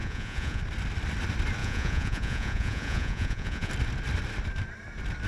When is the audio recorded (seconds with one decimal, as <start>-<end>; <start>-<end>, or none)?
0.6-1.6; 3.7-5.3